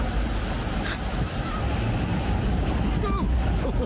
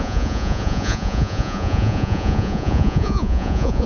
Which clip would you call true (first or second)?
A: first